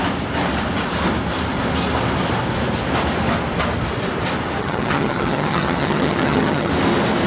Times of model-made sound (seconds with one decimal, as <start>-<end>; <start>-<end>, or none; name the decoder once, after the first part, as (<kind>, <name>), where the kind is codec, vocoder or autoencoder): 4.6-6.7 (vocoder, HiFi-GAN)